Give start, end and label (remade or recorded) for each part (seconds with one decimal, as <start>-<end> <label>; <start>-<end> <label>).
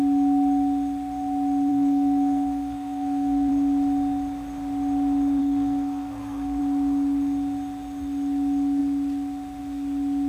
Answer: 0.0-1.7 recorded; 1.7-3.5 remade; 3.5-5.4 recorded; 5.4-6.6 remade; 6.6-10.3 recorded